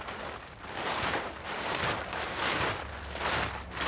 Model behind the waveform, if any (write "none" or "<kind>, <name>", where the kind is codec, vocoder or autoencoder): none